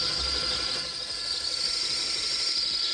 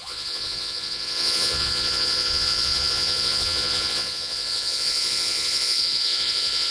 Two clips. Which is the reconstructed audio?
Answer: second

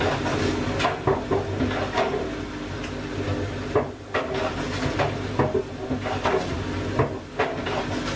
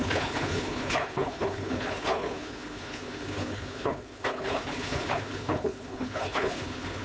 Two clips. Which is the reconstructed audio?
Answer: second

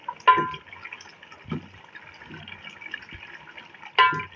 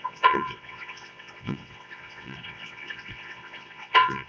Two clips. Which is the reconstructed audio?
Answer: second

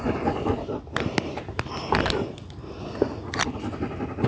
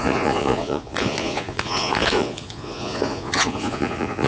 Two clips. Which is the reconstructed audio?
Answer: second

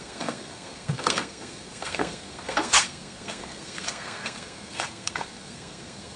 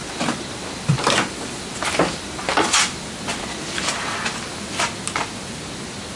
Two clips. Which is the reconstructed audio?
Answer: first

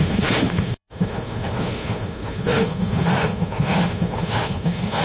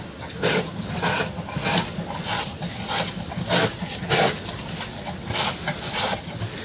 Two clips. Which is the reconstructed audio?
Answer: first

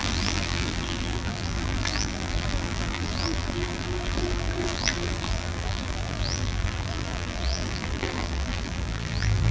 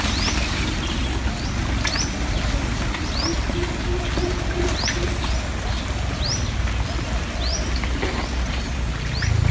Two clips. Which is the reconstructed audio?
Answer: first